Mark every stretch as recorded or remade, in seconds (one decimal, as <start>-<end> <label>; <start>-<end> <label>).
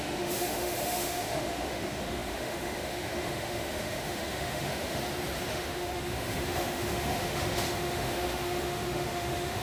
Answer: 0.0-5.0 remade; 5.0-5.5 recorded; 5.5-9.6 remade